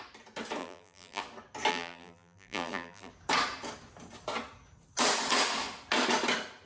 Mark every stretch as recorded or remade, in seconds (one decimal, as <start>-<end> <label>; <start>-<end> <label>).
0.0-0.6 recorded; 0.6-1.2 remade; 1.2-1.7 recorded; 1.7-3.1 remade; 3.1-6.7 recorded